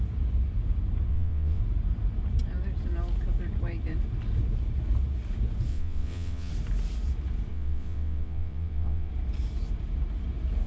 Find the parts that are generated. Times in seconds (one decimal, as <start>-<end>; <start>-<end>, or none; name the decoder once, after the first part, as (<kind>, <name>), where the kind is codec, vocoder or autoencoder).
1.1-1.6 (vocoder, WaveNeXt); 5.7-6.5; 7.5-9.1